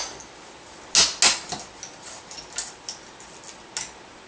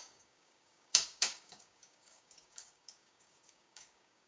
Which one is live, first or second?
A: first